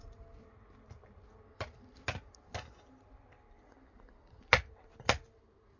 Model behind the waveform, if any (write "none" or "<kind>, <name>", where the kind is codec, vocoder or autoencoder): none